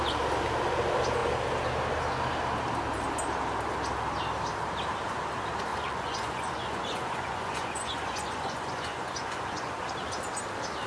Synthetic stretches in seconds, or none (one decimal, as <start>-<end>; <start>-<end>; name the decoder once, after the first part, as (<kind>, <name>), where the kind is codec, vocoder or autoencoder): 5.7-9.7 (vocoder, Vocos)